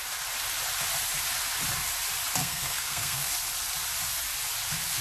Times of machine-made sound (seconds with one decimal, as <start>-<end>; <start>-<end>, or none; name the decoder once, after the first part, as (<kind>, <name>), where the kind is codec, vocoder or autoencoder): 2.4-3.3 (codec, SNAC)

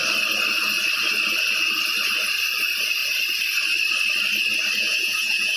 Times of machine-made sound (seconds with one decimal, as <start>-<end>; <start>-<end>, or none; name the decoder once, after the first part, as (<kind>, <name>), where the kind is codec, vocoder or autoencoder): 4.8-5.6 (vocoder, Vocos)